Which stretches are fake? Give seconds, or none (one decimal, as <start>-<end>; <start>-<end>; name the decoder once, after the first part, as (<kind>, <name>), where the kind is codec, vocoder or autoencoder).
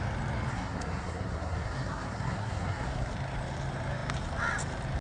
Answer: 0.5-3.1 (codec, SNAC)